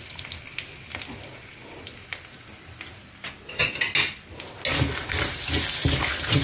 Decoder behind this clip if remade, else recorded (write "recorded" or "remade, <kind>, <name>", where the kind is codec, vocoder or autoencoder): recorded